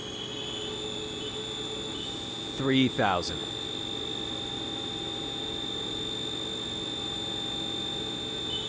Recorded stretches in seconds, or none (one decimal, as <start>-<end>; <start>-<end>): 0.0-8.7